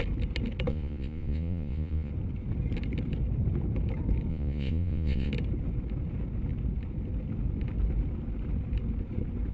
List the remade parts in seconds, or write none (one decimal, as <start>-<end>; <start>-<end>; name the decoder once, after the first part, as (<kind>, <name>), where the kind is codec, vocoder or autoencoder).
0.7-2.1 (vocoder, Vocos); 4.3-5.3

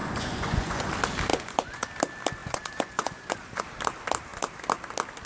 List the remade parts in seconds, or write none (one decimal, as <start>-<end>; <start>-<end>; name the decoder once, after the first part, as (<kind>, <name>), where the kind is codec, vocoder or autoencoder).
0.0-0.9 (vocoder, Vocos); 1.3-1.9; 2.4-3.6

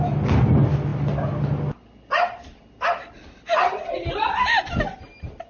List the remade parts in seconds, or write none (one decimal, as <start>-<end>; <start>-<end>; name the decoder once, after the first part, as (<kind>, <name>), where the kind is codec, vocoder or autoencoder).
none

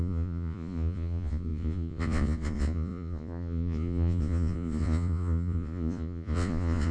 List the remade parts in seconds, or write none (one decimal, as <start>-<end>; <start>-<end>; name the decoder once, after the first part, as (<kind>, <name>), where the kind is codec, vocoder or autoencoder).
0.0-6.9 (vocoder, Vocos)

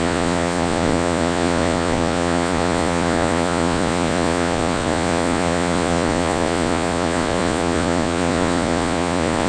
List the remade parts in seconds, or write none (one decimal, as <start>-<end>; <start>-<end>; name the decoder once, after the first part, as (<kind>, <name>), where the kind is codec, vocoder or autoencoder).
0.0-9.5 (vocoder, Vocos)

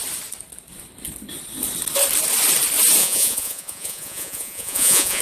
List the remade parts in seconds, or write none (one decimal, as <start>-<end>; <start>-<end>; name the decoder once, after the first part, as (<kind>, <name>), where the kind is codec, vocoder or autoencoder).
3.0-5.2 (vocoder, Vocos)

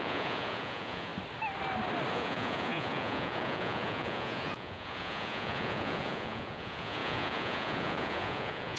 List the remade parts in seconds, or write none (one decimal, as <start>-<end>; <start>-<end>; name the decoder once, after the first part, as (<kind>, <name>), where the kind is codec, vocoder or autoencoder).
0.0-1.1 (vocoder, Vocos); 2.1-8.8

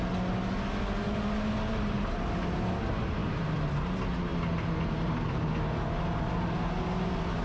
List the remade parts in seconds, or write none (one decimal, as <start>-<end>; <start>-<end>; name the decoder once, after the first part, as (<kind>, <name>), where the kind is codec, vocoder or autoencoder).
none